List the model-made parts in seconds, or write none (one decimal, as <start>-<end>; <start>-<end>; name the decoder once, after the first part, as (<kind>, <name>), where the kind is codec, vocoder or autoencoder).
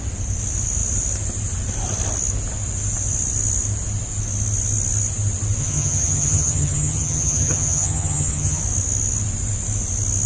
5.6-8.6 (vocoder, HiFi-GAN)